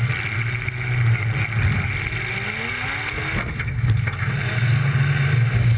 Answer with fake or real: real